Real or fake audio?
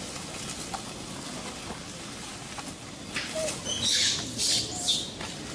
real